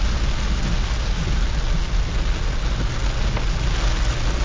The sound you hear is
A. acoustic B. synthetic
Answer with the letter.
A